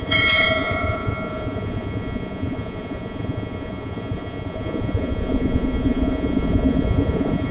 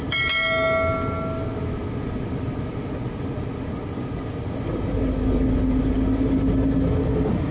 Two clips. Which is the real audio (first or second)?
second